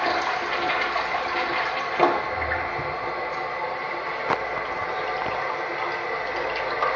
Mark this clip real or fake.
real